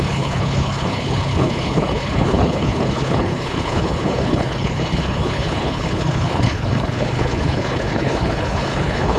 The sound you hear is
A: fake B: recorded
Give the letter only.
A